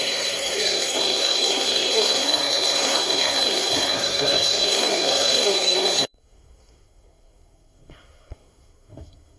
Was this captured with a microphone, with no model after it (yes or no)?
no